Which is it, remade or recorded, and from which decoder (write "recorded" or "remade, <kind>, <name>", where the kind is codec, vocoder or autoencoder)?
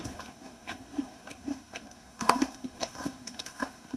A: remade, codec, SNAC